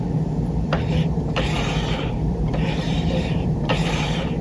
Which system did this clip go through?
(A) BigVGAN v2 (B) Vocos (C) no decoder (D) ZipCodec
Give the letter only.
A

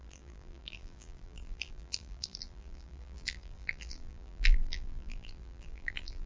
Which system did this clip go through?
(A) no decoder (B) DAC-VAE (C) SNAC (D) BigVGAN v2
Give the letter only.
D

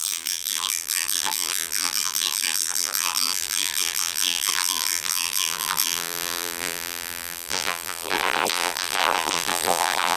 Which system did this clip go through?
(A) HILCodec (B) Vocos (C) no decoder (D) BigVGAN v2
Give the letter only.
D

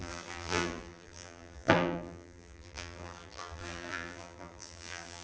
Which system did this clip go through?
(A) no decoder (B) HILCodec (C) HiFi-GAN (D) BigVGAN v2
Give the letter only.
D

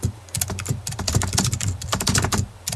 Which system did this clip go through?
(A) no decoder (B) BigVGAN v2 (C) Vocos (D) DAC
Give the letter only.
B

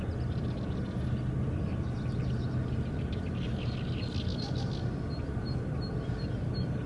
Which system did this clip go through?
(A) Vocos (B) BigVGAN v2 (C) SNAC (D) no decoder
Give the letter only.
D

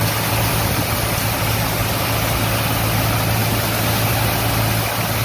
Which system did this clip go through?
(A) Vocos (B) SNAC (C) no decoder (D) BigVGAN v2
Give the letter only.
C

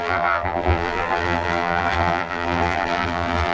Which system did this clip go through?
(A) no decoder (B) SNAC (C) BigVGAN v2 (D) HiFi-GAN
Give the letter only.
C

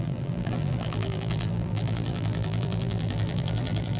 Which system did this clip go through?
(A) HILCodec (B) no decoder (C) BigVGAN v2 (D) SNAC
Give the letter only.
C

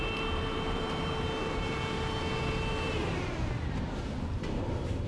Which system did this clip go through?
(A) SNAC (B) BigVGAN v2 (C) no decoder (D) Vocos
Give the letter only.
B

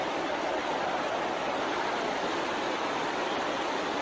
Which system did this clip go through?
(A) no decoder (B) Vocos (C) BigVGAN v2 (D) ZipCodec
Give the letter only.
A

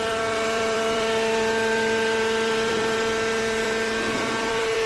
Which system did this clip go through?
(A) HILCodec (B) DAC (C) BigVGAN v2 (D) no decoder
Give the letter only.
C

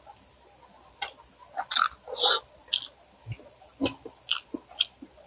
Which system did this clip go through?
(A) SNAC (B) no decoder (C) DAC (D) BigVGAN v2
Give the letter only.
B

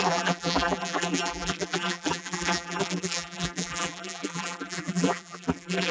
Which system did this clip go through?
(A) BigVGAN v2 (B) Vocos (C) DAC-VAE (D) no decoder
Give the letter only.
A